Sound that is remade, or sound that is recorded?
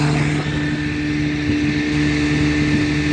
recorded